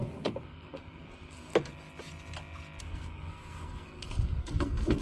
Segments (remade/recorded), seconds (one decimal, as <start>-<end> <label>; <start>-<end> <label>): 0.0-1.5 remade; 1.5-2.8 recorded; 2.8-5.0 remade